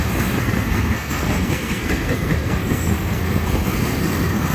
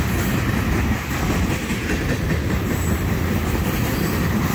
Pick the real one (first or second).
second